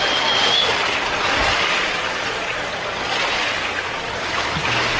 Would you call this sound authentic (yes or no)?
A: yes